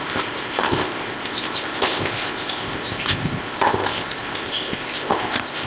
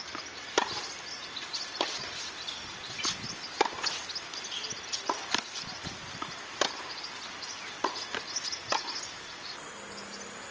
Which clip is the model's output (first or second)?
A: first